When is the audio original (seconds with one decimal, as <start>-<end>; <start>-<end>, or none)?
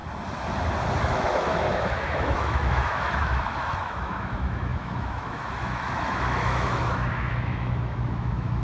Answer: 0.0-1.0